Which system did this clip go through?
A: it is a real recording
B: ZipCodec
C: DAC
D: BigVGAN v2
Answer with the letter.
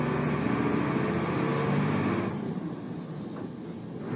A